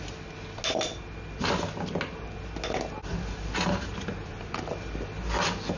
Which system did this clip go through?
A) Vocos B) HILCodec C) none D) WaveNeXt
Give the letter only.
C